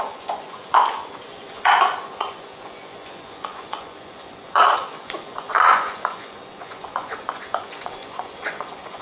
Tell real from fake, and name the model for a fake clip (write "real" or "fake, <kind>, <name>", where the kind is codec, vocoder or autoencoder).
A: fake, vocoder, Vocos